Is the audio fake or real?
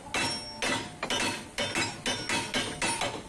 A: real